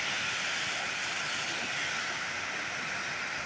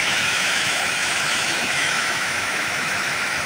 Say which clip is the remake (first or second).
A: second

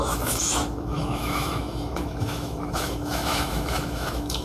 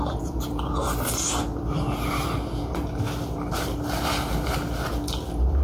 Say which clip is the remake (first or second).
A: first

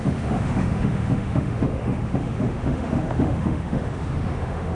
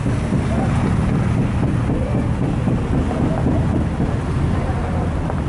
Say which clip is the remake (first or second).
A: first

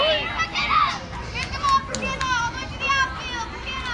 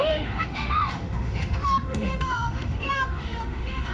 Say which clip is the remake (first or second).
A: second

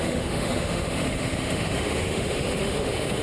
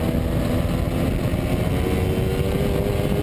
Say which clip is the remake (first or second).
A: first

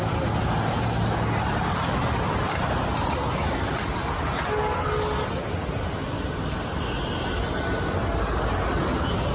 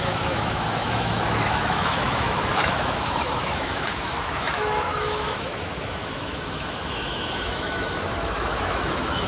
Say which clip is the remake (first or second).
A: second